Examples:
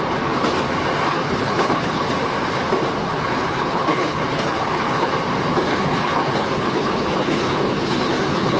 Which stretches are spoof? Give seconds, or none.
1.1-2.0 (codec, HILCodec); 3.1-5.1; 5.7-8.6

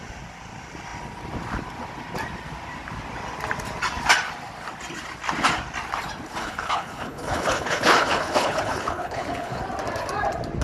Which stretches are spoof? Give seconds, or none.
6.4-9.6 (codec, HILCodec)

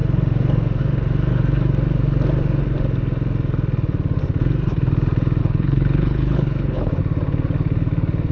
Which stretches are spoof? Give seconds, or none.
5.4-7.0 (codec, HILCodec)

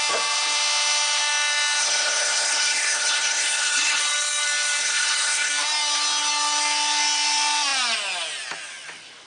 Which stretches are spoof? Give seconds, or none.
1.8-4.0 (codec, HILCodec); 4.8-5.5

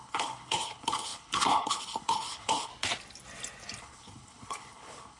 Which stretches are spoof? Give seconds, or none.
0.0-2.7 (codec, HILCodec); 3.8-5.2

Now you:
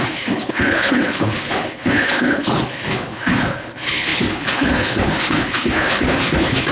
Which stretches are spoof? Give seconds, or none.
0.0-6.7 (codec, HILCodec)

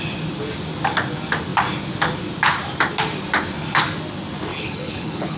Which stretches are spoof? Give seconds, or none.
4.5-5.4 (codec, HILCodec)

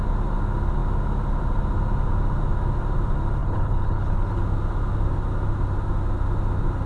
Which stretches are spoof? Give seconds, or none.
3.4-4.4 (codec, HILCodec)